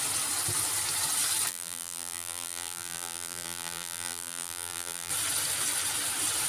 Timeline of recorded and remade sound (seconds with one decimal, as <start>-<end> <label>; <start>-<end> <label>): 0.0-1.5 recorded; 1.5-5.1 remade; 5.1-6.5 recorded